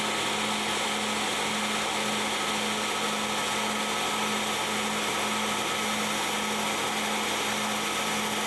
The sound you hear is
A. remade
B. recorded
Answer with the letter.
B